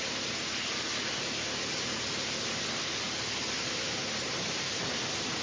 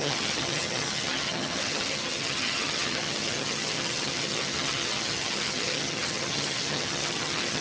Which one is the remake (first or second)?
second